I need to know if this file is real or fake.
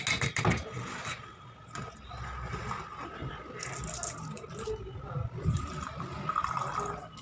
real